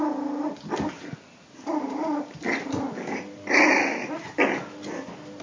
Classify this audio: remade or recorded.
recorded